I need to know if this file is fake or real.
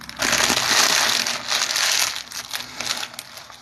real